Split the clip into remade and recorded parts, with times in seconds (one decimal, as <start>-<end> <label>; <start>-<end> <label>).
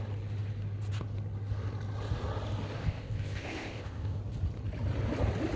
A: 0.0-2.8 recorded; 2.8-4.2 remade; 4.2-5.6 recorded